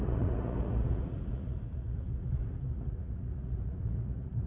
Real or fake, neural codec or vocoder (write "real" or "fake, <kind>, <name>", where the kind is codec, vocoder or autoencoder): fake, vocoder, Vocos